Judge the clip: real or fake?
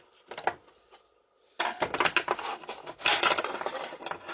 real